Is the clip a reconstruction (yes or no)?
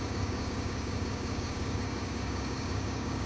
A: yes